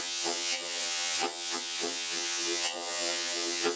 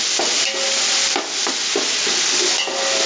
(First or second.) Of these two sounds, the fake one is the first